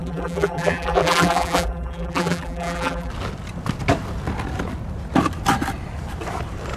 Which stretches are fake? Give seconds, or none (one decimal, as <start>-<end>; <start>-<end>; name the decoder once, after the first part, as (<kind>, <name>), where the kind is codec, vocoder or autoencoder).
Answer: 0.0-3.1 (vocoder, BigVGAN v2)